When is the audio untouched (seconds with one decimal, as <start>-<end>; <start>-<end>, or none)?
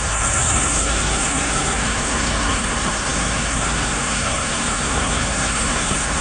none